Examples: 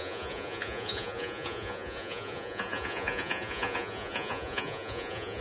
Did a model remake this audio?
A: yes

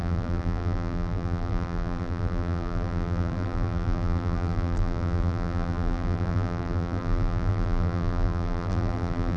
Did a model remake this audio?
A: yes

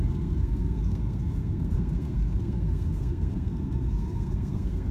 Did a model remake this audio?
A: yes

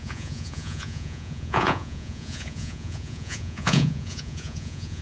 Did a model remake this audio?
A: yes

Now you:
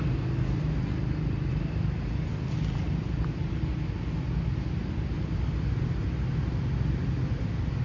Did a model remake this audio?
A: no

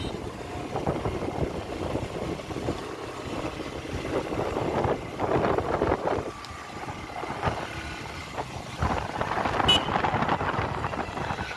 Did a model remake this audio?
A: no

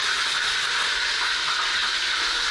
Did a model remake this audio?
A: no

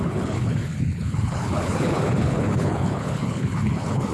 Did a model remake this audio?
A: yes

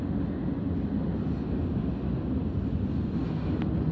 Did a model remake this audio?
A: no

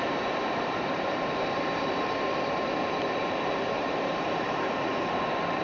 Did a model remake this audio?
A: yes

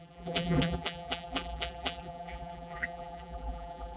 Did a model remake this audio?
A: yes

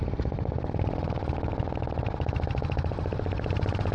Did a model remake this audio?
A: no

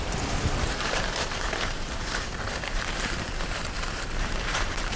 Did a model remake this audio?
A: yes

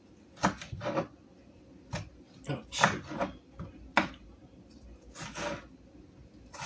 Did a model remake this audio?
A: no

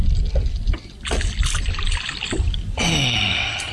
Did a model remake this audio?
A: no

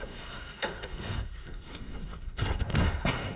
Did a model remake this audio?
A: yes